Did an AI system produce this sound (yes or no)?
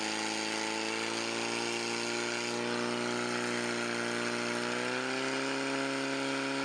no